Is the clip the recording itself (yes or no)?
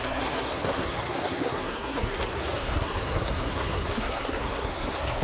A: no